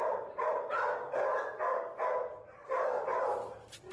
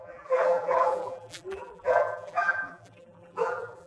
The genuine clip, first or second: first